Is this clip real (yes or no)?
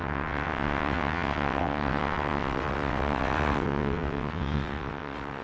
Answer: no